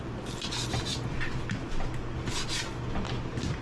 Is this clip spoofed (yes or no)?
no